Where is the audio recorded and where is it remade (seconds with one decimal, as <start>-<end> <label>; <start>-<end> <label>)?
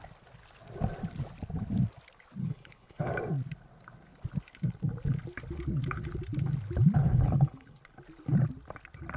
0.0-2.4 recorded; 2.4-3.1 remade; 3.1-7.0 recorded; 7.0-7.8 remade; 7.8-9.2 recorded